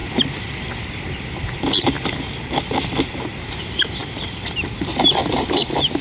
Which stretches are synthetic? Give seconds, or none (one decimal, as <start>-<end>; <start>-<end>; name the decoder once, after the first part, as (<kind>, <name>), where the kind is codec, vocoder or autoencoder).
3.6-6.0 (vocoder, BigVGAN v2)